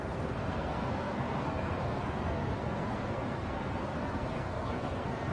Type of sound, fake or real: fake